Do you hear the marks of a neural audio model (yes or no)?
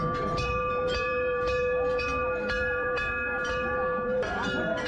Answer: yes